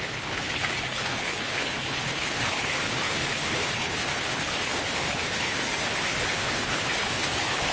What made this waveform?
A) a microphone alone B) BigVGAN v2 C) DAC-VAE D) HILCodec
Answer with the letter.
D